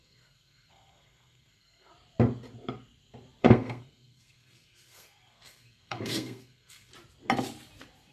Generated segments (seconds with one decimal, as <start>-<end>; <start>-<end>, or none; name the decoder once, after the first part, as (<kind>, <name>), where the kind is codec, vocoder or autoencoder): 0.0-1.9 (codec, SNAC); 3.4-6.9